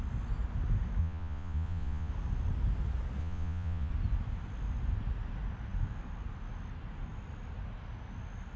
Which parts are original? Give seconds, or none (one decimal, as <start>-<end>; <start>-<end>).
0.0-1.0; 2.1-3.2; 3.9-8.6